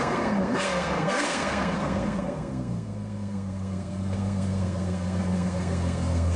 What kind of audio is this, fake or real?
fake